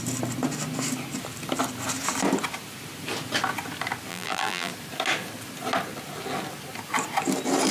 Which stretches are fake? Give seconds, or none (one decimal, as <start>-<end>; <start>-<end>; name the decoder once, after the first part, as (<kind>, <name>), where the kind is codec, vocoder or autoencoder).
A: 4.1-4.7 (vocoder, BigVGAN v2)